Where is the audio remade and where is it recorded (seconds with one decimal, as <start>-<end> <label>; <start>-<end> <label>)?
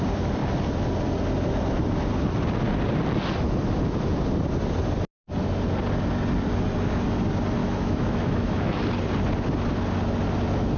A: 0.0-7.6 recorded; 7.6-8.8 remade; 8.8-10.8 recorded